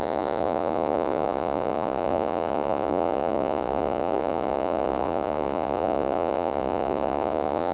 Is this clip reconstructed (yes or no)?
yes